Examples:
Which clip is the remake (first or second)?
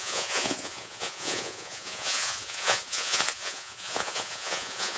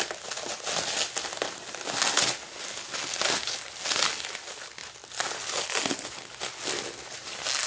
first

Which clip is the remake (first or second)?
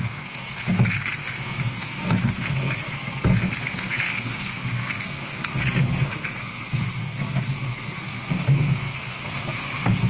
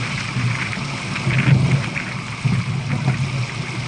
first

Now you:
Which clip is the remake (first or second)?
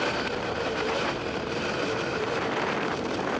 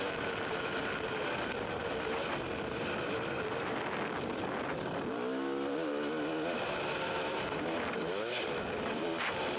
first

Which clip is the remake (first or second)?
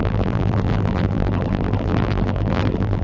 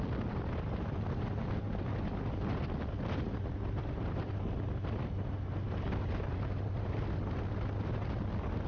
first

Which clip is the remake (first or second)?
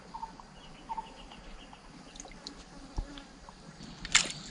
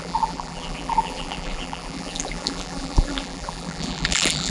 second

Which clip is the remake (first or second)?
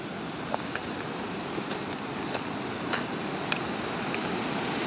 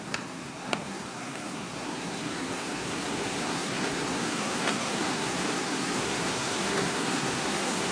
second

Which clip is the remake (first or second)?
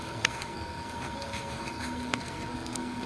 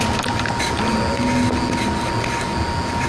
first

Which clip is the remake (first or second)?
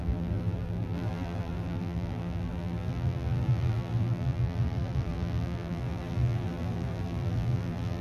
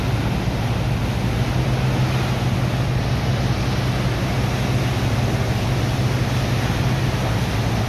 first